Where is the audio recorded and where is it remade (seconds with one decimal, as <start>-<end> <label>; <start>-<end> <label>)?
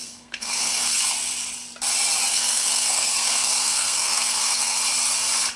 0.0-1.0 remade; 1.0-2.3 recorded; 2.3-4.8 remade; 4.8-5.6 recorded